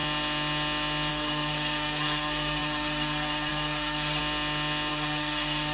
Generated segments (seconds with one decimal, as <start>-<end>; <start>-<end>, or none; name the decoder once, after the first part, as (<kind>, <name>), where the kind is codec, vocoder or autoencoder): 1.1-4.2 (codec, SNAC); 4.9-5.7